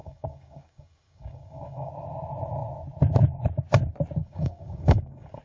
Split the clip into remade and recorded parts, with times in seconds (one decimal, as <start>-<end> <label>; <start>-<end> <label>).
0.0-1.9 remade; 1.9-4.2 recorded; 4.2-5.4 remade